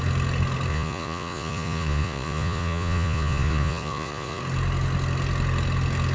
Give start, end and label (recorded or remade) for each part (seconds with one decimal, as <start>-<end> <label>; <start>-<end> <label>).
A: 0.0-0.7 recorded; 0.7-4.4 remade; 4.4-6.1 recorded